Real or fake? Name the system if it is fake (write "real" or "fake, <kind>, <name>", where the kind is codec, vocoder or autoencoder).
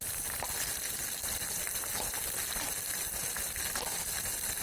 real